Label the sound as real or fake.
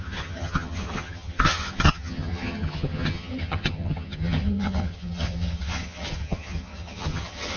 fake